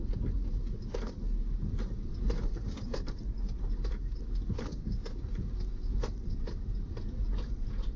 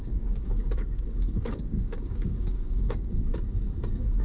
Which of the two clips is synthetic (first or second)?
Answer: second